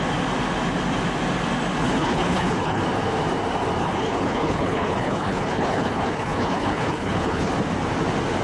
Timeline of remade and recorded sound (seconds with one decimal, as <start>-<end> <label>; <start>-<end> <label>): 0.0-1.8 recorded; 1.8-2.8 remade; 2.8-3.8 recorded; 3.8-7.5 remade; 7.5-8.4 recorded